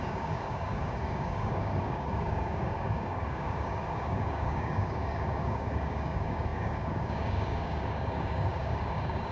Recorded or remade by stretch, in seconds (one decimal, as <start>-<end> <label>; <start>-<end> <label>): 0.0-9.3 remade